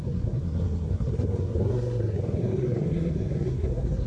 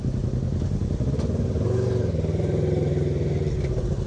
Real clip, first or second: second